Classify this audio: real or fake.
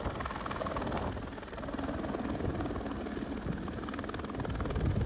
real